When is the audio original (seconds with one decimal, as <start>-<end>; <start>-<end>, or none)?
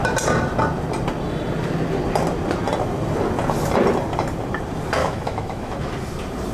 0.0-5.0; 5.8-6.5